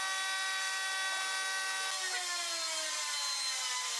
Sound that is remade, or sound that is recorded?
recorded